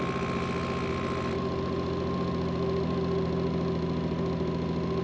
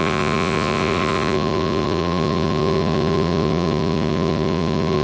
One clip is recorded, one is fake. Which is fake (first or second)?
second